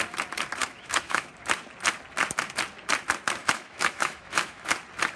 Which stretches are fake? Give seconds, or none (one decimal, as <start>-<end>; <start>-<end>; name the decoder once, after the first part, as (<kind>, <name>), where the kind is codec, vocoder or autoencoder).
0.6-1.3 (autoencoder, DAC-VAE); 3.4-4.7